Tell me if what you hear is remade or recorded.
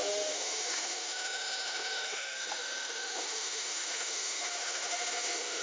remade